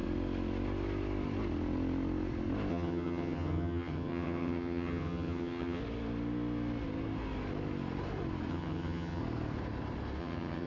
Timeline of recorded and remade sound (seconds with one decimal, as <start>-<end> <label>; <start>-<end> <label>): 0.0-2.7 recorded; 2.7-5.8 remade; 5.8-8.5 recorded; 8.5-9.2 remade; 9.2-10.2 recorded; 10.2-10.7 remade